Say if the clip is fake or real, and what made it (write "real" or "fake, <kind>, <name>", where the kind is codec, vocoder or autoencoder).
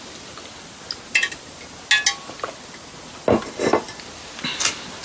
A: real